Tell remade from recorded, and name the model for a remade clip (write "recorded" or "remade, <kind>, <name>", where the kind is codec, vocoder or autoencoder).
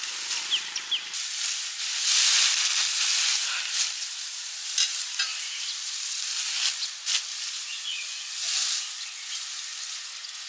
recorded